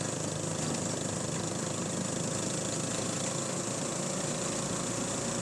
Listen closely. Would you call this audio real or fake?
real